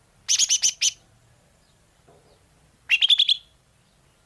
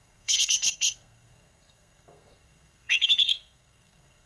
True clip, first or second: first